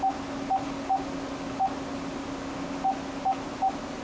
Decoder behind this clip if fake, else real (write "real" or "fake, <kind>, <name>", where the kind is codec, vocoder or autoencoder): real